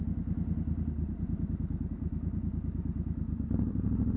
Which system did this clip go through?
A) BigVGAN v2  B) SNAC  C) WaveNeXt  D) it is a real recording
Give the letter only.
A